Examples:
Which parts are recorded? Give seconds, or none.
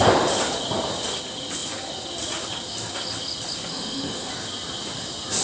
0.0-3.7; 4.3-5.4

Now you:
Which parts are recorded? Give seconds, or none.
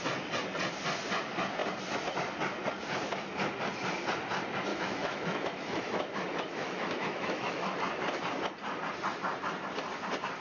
0.0-4.7; 7.8-10.4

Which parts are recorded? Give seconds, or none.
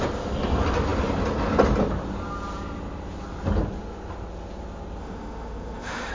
0.0-5.0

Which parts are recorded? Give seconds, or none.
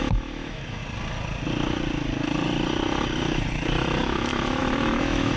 0.8-4.0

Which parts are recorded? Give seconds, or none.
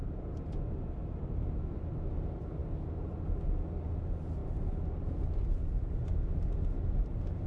0.0-7.5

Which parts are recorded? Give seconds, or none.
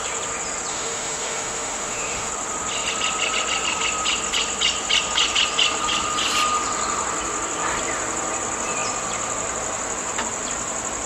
0.0-0.7; 2.3-11.1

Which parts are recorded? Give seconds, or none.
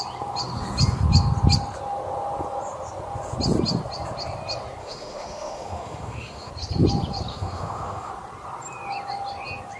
0.0-4.8; 6.5-7.3; 8.1-9.8